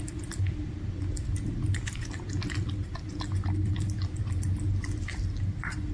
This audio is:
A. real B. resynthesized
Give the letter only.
A